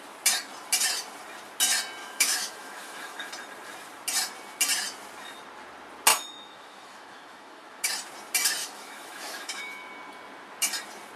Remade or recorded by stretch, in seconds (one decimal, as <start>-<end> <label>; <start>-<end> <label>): 0.0-2.0 recorded; 2.0-3.3 remade; 3.3-6.1 recorded; 6.1-7.9 remade; 7.9-8.6 recorded; 8.6-9.9 remade; 9.9-11.2 recorded